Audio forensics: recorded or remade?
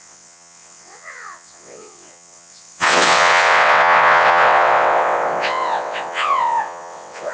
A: remade